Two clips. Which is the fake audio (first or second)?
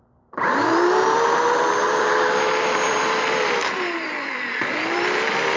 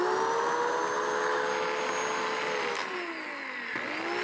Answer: first